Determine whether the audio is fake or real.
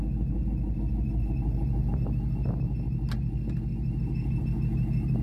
real